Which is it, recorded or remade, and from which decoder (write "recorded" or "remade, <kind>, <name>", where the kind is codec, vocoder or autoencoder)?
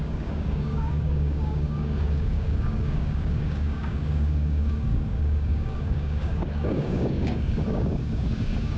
remade, codec, DAC